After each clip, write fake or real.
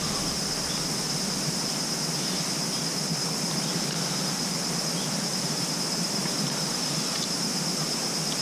fake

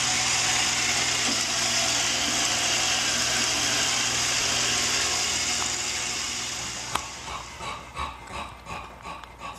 real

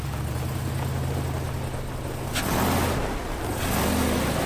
real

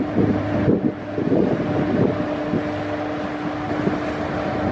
real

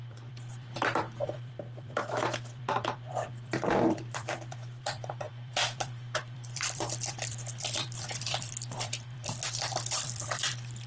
fake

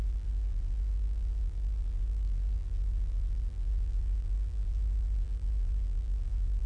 fake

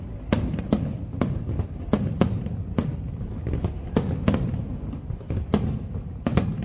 real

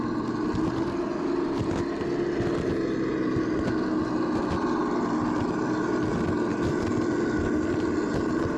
real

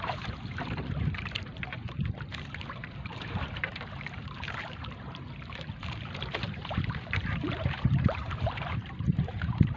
fake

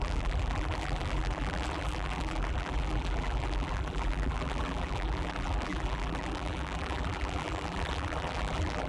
fake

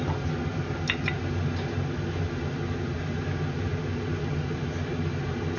real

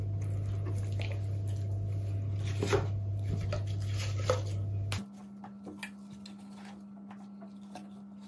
real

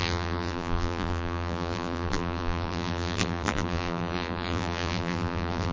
fake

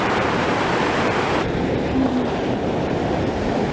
fake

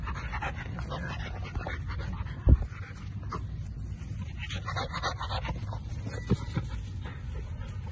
real